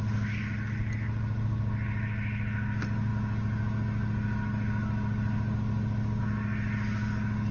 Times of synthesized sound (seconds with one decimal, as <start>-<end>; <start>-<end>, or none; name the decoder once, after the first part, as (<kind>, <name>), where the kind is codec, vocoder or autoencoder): none